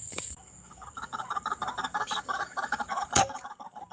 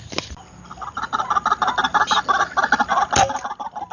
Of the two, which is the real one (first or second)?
second